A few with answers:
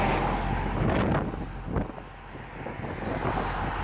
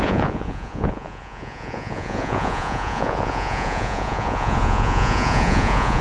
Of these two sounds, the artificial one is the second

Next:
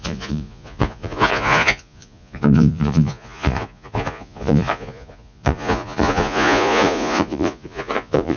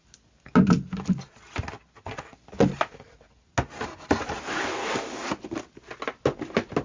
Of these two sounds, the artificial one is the first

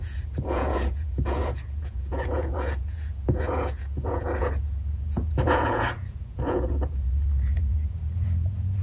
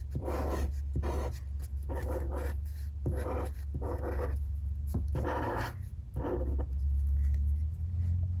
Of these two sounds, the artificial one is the first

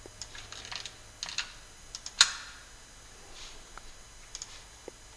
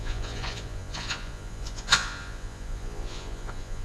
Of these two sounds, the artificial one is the second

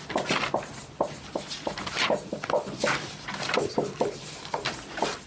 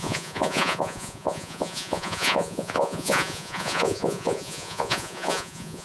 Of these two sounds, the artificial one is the second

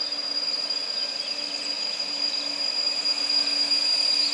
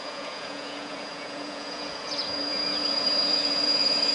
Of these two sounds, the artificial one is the second